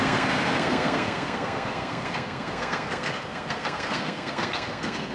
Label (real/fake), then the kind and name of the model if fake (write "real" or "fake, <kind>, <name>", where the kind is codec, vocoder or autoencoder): fake, codec, SNAC